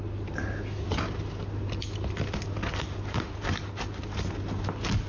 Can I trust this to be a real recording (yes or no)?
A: yes